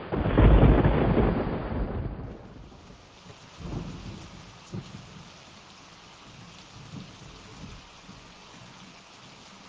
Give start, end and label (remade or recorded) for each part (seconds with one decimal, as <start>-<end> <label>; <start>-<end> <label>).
0.0-7.5 recorded; 7.5-9.1 remade; 9.1-9.7 recorded